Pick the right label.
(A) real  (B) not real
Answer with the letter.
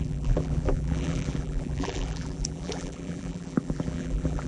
B